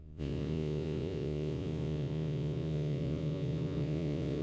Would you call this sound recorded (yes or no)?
no